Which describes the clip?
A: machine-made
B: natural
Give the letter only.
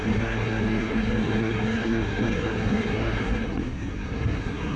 A